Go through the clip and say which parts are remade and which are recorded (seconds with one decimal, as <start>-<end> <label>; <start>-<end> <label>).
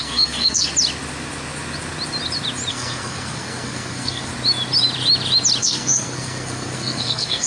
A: 0.0-0.7 remade; 0.7-2.7 recorded; 2.7-4.3 remade; 4.3-5.6 recorded; 5.6-7.5 remade